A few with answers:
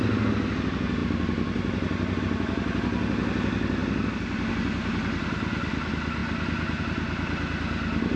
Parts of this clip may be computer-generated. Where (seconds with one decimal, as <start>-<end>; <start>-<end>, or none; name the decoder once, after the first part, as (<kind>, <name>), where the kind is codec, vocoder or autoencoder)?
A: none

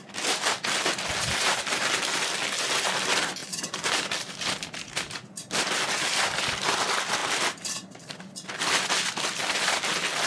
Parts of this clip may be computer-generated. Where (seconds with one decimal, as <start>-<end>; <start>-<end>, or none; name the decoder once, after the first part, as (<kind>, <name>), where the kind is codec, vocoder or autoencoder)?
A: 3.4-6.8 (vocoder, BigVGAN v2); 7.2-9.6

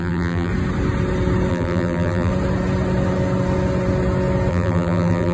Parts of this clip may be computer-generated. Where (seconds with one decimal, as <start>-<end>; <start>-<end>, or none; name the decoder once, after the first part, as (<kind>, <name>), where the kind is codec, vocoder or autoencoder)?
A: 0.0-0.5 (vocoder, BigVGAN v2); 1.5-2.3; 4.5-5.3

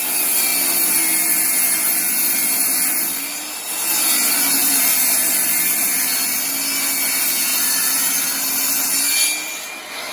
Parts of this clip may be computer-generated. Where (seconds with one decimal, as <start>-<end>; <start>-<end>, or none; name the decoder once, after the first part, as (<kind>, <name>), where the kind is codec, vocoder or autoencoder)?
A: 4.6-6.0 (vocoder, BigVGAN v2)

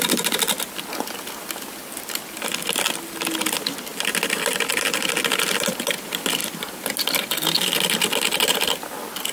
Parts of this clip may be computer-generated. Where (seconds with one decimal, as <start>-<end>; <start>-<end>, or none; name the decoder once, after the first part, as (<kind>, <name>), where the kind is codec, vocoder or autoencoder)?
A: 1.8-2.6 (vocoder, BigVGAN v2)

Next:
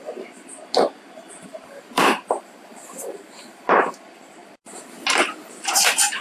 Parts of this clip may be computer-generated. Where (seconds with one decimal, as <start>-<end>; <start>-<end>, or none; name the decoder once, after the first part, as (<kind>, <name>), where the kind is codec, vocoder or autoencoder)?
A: 0.0-6.2 (vocoder, BigVGAN v2)

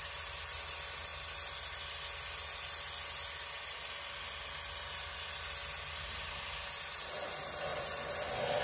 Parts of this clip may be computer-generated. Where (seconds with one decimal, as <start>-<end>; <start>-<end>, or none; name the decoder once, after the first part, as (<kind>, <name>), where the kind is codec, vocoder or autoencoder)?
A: none